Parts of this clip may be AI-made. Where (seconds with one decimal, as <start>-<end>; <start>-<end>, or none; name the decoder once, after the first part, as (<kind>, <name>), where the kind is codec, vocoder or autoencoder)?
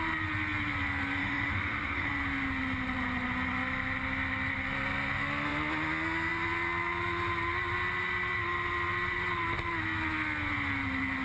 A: 1.2-2.1 (autoencoder, DAC-VAE)